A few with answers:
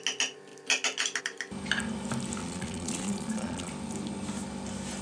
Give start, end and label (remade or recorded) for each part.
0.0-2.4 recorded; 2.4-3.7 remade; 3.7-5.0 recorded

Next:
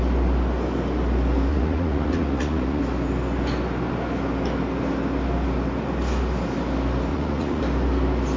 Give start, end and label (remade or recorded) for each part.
0.0-1.5 recorded; 1.5-2.8 remade; 2.8-7.1 recorded; 7.1-7.6 remade; 7.6-8.4 recorded

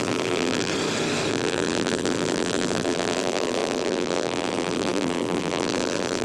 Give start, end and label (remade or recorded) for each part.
0.0-0.7 remade; 0.7-1.3 recorded; 1.3-6.2 remade